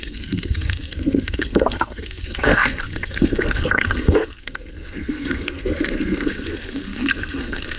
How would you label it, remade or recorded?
remade